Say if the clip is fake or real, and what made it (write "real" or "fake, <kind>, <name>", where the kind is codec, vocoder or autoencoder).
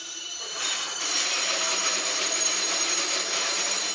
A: fake, vocoder, BigVGAN v2